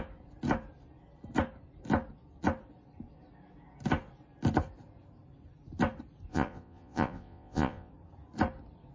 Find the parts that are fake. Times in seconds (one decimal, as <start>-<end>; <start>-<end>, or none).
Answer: 6.3-7.9